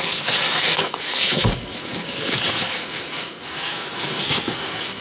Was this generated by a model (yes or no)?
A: yes